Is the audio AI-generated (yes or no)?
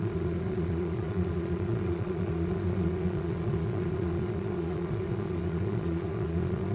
yes